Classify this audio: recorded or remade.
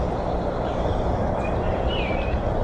recorded